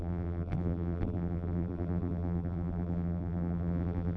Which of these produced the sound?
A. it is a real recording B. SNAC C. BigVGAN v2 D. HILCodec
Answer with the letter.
C